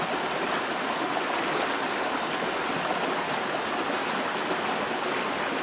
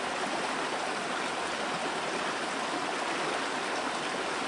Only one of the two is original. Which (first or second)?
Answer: first